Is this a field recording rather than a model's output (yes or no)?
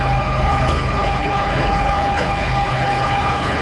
no